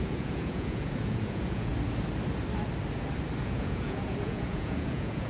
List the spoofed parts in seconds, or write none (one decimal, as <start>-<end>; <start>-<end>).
0.0-1.7; 3.4-5.3